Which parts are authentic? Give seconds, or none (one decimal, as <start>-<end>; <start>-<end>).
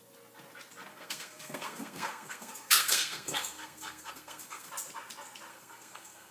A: 0.0-0.9; 4.7-5.5